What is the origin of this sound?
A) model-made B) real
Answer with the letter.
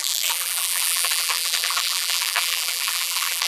A